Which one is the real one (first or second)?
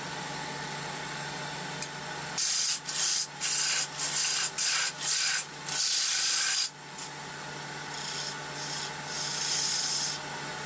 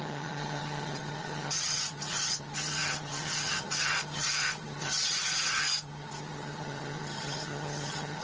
first